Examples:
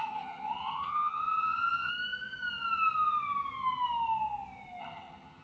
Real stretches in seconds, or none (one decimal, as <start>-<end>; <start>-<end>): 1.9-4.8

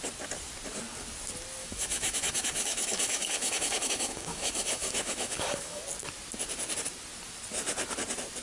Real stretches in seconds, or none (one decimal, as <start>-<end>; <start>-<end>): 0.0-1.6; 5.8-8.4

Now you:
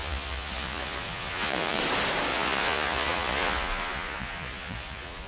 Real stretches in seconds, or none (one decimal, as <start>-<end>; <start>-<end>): 1.8-2.3